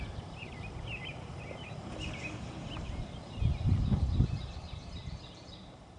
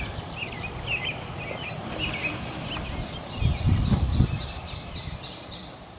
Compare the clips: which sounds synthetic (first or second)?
first